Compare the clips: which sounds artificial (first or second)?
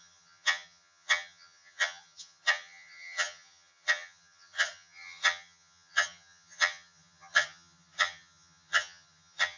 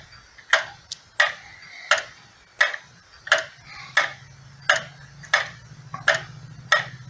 first